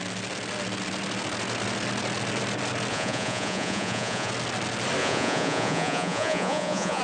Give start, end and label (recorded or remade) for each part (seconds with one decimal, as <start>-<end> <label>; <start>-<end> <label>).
0.0-2.9 recorded; 2.9-4.3 remade; 4.3-5.0 recorded; 5.0-7.0 remade